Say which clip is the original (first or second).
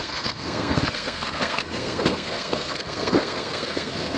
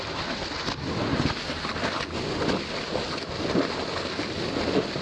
second